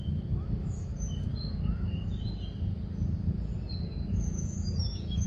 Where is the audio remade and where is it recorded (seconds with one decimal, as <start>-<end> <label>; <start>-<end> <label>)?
0.0-0.9 remade; 0.9-4.1 recorded; 4.1-5.3 remade